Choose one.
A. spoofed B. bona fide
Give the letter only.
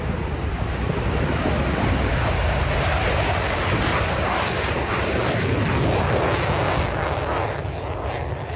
B